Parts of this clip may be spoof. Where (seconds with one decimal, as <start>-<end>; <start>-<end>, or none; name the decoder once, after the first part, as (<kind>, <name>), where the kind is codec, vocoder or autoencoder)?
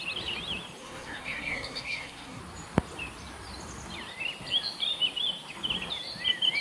0.8-2.4 (codec, SNAC)